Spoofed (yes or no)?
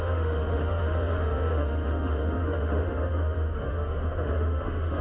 yes